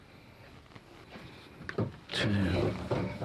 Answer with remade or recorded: recorded